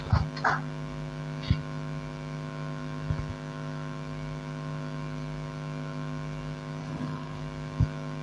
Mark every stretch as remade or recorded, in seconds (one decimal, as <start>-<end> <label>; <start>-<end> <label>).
0.0-6.8 recorded; 6.8-7.4 remade; 7.4-8.2 recorded

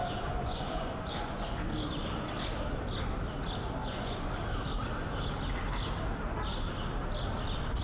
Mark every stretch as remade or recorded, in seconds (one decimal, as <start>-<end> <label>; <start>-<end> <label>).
0.0-1.5 remade; 1.5-3.8 recorded; 3.8-4.3 remade; 4.3-7.8 recorded

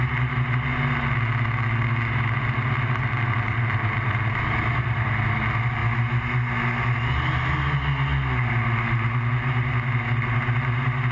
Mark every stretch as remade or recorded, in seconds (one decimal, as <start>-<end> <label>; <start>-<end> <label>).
0.0-11.1 recorded